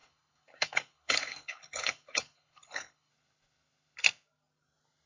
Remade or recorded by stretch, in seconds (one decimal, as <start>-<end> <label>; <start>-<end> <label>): 0.0-3.1 remade; 3.1-5.1 recorded